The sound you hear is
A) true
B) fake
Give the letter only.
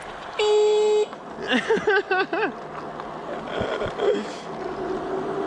A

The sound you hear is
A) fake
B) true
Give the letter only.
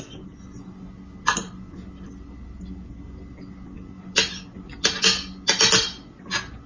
B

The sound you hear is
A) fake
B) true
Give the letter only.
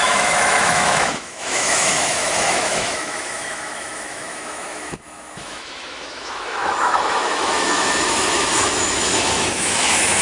A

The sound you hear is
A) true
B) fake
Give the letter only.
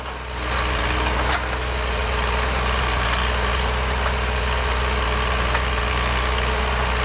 A